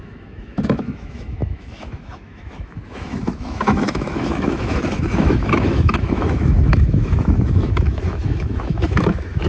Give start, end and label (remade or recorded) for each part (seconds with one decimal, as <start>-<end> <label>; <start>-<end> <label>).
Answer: 0.0-9.5 remade